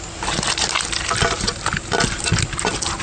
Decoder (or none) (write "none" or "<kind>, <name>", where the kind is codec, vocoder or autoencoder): none